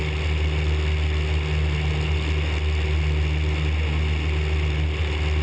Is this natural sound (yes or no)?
yes